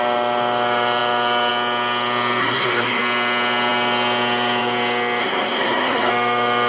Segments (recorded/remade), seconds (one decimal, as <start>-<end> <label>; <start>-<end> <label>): 0.0-2.4 recorded; 2.4-3.0 remade; 3.0-5.2 recorded; 5.2-6.1 remade; 6.1-6.7 recorded